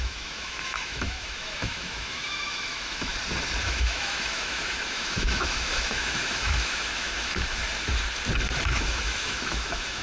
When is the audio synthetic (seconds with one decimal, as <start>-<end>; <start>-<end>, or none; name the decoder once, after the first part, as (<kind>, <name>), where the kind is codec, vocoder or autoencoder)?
0.0-3.1 (autoencoder, DAC-VAE); 3.6-7.6; 8.7-10.0